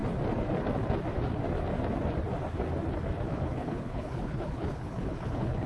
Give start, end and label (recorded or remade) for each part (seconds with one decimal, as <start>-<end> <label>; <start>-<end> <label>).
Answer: 0.0-3.3 recorded; 3.3-5.7 remade